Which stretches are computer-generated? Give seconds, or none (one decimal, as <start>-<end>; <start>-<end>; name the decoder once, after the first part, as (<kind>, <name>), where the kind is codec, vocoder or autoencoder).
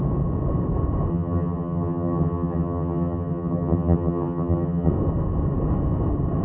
1.1-4.9 (vocoder, HiFi-GAN)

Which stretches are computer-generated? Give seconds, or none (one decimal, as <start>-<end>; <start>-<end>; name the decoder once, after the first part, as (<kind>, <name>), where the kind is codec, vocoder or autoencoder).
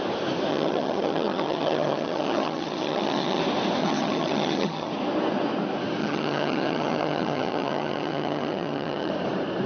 0.5-3.4 (vocoder, HiFi-GAN); 3.8-4.9; 6.0-9.1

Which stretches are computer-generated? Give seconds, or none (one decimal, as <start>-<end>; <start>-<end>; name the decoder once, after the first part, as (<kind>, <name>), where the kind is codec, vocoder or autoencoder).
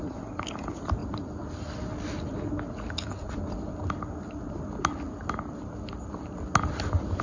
none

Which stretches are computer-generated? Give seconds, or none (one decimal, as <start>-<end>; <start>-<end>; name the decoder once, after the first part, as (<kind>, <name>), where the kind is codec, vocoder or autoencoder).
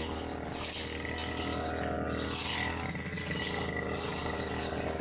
none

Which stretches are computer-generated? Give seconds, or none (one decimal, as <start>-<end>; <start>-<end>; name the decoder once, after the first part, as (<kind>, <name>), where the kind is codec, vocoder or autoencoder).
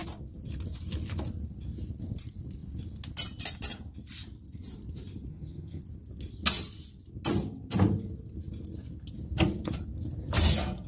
5.3-5.8 (vocoder, HiFi-GAN)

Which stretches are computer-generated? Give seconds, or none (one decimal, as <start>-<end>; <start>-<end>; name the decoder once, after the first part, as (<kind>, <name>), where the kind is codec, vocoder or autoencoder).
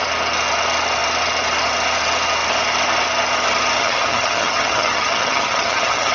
3.8-6.1 (vocoder, HiFi-GAN)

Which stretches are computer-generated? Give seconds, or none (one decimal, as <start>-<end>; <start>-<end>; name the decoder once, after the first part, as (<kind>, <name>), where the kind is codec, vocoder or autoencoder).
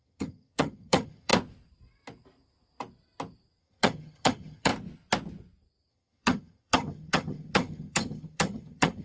0.0-1.3 (vocoder, HiFi-GAN); 3.6-4.7; 5.9-9.0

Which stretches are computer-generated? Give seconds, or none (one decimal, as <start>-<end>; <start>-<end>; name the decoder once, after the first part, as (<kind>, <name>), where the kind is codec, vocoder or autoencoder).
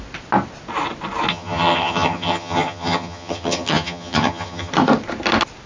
1.3-4.7 (vocoder, HiFi-GAN)